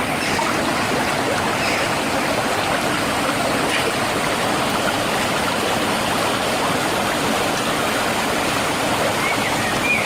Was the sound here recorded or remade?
recorded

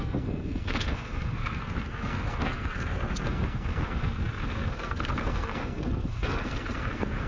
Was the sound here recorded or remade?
remade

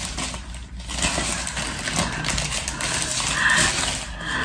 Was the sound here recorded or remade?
recorded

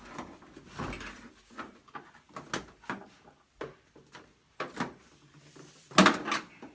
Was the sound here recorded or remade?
recorded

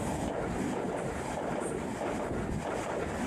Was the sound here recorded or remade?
recorded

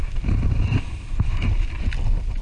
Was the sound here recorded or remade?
remade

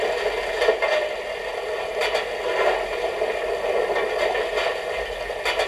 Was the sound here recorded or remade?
recorded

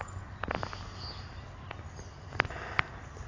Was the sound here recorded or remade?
recorded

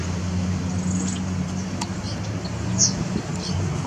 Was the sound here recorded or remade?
recorded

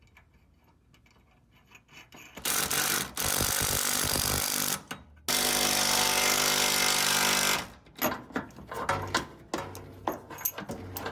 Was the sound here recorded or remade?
recorded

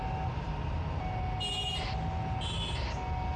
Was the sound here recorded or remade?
recorded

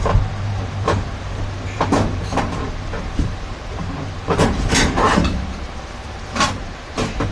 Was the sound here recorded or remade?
remade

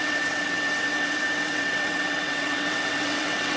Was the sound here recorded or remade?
remade